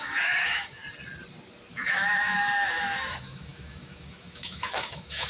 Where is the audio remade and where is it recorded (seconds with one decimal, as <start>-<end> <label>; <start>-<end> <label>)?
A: 0.0-0.8 remade; 0.8-1.7 recorded; 1.7-5.3 remade